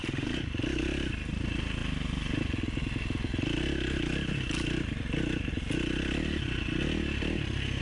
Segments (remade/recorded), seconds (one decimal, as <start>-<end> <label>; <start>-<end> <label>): 0.0-0.5 remade; 0.5-7.8 recorded